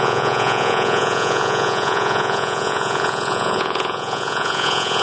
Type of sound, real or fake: fake